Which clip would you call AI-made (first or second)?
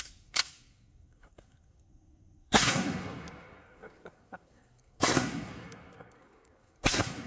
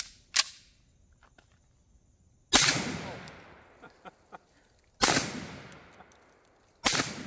first